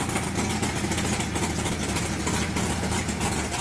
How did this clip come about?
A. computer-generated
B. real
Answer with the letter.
B